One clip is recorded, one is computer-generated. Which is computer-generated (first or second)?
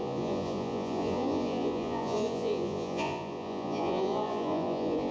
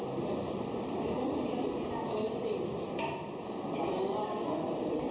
first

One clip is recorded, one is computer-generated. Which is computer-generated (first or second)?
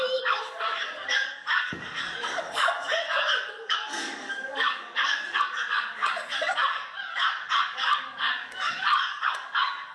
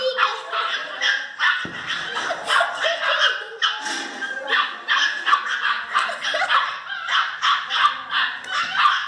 first